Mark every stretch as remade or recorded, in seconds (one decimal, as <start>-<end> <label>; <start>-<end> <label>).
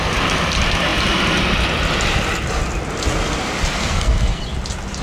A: 0.0-3.8 recorded; 3.8-4.4 remade; 4.4-5.0 recorded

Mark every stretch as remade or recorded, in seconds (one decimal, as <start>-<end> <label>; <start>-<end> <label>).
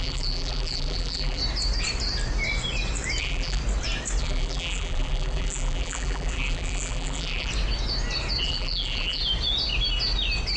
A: 0.0-1.4 remade; 1.4-3.2 recorded; 3.2-3.6 remade; 3.6-4.2 recorded; 4.2-7.5 remade; 7.5-8.4 recorded; 8.4-9.2 remade; 9.2-10.6 recorded